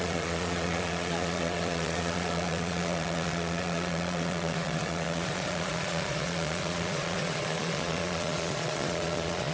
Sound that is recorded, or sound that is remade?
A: remade